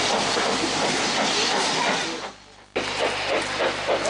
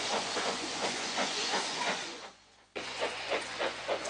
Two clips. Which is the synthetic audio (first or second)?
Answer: second